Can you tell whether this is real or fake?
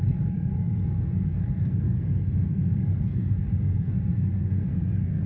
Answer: fake